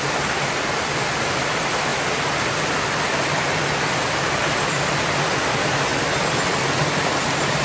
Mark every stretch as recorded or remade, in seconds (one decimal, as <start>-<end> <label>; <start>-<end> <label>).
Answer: 0.0-7.6 recorded